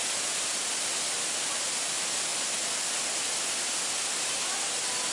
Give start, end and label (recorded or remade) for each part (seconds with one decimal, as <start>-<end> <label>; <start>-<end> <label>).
0.0-5.1 recorded